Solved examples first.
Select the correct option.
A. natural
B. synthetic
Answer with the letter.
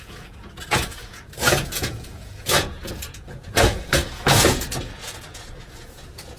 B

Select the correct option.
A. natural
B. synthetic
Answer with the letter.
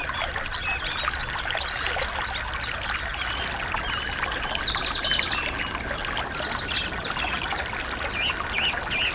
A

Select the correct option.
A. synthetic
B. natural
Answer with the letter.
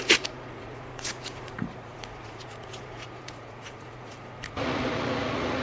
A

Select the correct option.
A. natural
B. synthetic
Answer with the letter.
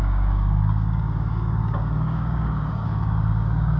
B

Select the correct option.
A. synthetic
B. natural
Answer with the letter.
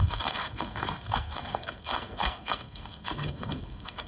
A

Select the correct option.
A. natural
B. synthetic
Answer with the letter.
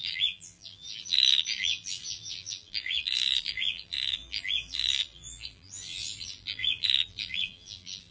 B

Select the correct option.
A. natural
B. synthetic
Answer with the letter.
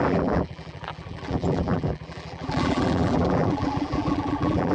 B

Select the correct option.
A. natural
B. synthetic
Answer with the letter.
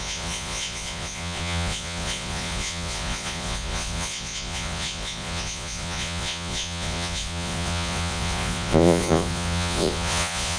B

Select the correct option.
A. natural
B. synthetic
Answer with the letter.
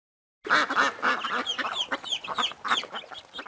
A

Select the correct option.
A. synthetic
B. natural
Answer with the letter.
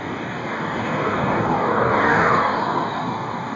A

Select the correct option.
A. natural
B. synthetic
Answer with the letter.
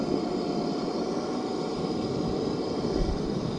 B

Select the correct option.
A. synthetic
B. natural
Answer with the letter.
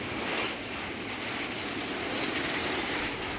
B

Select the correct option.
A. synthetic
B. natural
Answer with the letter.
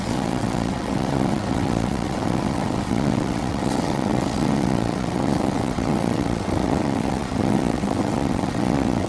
A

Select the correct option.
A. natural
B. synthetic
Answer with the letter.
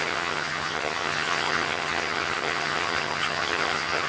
B